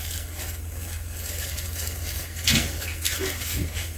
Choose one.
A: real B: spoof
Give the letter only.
B